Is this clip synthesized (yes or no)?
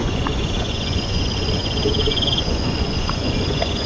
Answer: yes